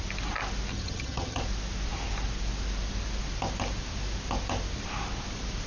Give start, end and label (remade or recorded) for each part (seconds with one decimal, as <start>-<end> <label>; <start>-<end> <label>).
0.0-0.7 recorded; 0.7-1.4 remade; 1.4-5.7 recorded